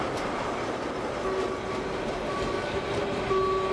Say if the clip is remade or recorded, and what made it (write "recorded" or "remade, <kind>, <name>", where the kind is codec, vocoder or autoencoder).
recorded